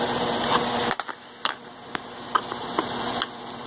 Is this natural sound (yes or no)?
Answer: yes